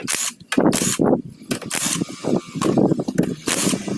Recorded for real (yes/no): yes